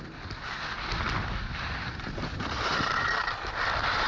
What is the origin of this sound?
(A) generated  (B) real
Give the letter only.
B